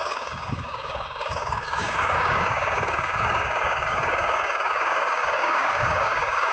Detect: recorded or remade remade